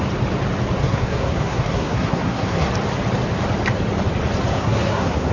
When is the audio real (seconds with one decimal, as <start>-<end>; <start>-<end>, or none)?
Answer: 0.0-0.8; 2.7-4.5